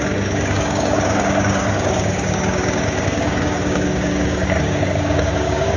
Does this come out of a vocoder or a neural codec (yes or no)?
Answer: yes